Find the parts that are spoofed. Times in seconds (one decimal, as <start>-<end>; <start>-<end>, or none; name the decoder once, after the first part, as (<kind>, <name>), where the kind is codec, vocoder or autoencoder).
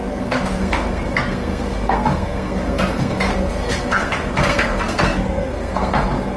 0.0-6.4 (codec, SNAC)